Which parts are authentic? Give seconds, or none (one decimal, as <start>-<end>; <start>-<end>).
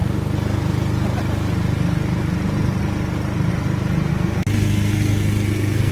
0.0-4.1